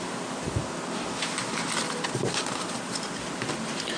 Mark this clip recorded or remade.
recorded